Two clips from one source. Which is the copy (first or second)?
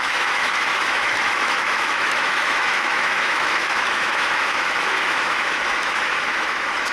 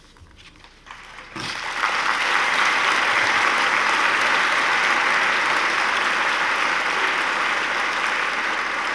first